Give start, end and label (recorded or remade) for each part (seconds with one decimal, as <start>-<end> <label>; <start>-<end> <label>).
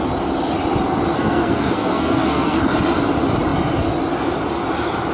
0.0-1.1 recorded; 1.1-2.6 remade; 2.6-5.1 recorded